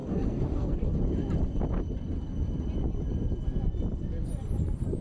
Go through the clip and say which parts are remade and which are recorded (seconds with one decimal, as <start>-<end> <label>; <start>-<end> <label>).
0.0-0.9 remade; 0.9-5.0 recorded